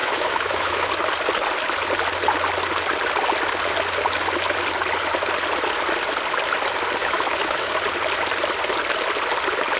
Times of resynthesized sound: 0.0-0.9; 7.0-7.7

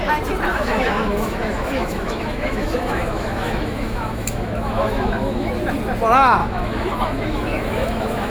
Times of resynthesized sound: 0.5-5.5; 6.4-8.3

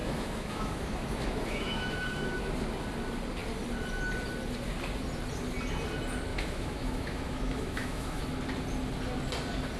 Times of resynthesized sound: 0.0-2.5; 6.3-8.2